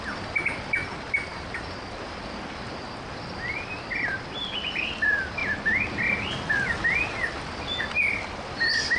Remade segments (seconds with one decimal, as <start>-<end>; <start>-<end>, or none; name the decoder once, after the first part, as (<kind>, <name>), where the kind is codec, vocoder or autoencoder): none